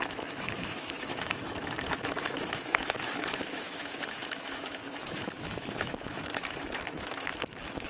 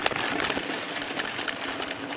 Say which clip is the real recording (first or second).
second